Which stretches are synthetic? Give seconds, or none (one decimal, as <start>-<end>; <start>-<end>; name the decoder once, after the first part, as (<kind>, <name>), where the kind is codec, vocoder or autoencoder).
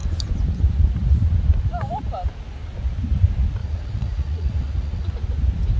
3.6-5.1 (vocoder, Vocos)